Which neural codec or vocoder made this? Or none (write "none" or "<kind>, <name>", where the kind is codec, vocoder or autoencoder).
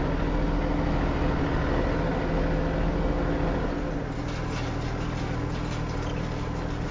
none